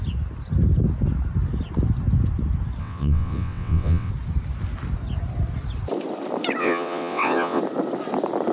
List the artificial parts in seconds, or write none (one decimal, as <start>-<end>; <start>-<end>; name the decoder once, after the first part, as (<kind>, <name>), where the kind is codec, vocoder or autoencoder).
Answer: 2.8-4.1 (vocoder, WaveNeXt); 6.6-7.6